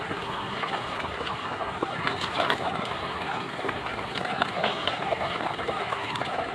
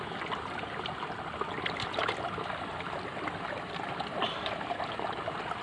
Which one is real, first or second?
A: second